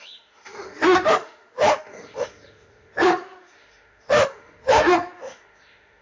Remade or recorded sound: remade